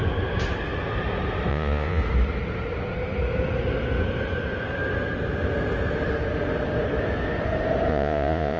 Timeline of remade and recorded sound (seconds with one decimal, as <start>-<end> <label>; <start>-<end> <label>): 0.0-1.5 recorded; 1.5-2.0 remade; 2.0-7.9 recorded; 7.9-8.6 remade